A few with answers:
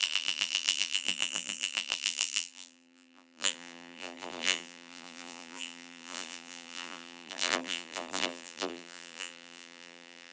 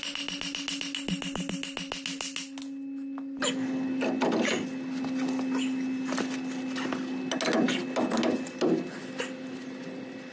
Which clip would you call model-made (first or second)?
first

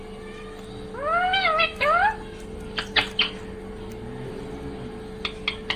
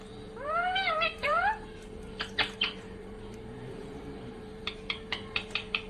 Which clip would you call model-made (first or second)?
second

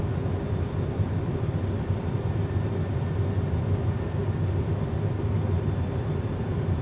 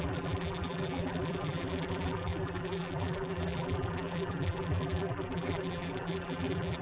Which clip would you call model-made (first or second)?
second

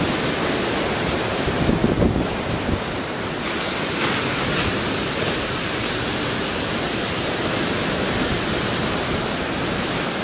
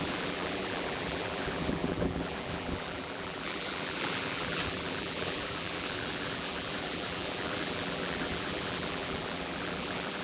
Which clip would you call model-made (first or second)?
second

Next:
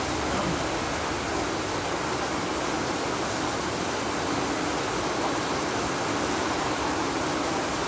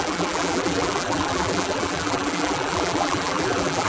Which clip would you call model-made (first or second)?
second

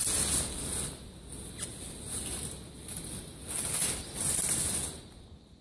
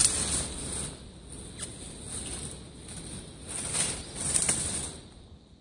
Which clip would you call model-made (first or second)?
second